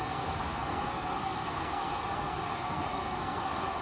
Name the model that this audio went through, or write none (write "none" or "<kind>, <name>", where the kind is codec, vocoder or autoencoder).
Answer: codec, SNAC